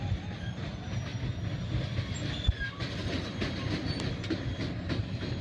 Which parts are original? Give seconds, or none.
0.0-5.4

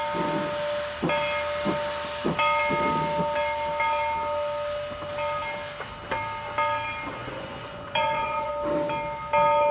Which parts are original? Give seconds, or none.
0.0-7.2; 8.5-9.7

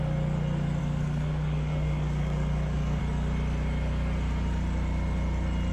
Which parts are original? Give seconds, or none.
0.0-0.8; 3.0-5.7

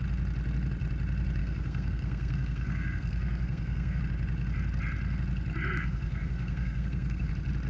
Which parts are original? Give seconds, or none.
0.0-1.4; 4.0-5.8; 7.3-7.7

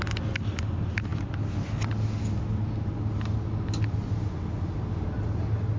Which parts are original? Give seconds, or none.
0.0-5.8

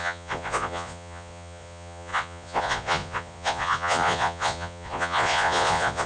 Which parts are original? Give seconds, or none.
none

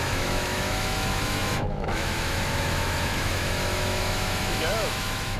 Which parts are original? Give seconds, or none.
none